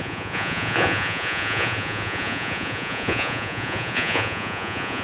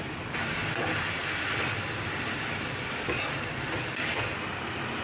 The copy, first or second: first